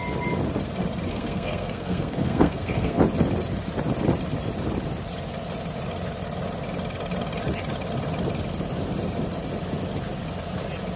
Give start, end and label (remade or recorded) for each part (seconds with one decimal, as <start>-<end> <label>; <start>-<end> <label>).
0.0-1.1 recorded; 1.1-3.0 remade; 3.0-11.0 recorded